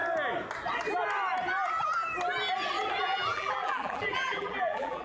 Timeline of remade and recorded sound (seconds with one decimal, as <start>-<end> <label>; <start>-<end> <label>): 0.0-3.0 recorded; 3.0-5.0 remade